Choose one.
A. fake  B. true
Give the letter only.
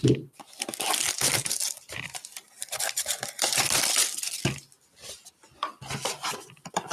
A